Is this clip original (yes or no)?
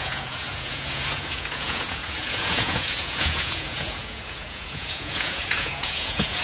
no